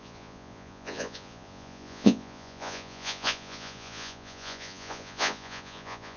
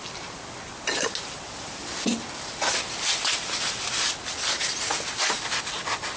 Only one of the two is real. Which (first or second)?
second